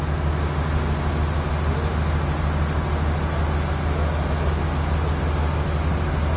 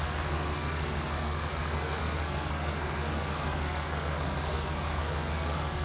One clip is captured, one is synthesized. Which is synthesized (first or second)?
second